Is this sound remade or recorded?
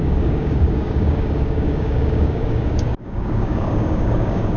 remade